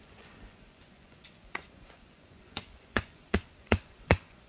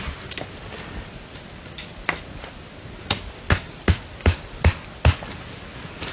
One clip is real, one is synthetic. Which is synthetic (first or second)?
first